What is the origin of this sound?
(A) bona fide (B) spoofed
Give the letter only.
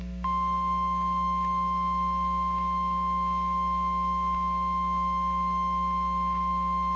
B